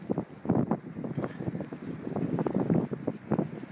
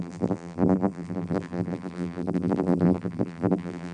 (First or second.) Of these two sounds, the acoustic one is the first